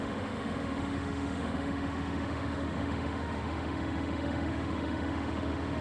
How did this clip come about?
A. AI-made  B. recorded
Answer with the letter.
A